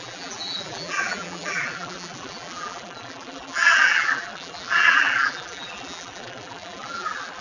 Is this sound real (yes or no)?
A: no